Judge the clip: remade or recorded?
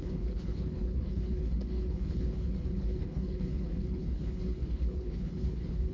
remade